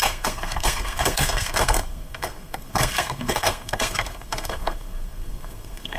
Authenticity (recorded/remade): remade